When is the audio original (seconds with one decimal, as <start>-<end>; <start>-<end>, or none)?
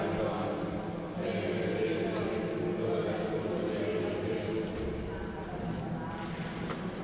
0.0-7.0